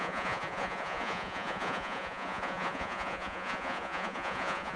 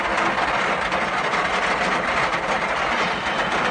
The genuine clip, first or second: second